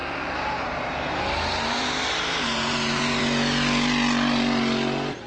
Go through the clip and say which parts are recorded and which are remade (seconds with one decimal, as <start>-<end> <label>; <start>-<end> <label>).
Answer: 0.0-3.2 remade; 3.2-5.3 recorded